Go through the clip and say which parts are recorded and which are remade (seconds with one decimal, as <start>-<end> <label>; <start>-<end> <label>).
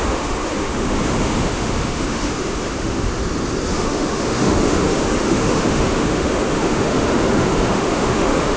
0.0-3.1 remade; 3.1-3.7 recorded; 3.7-8.6 remade